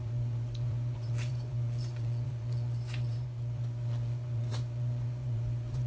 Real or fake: fake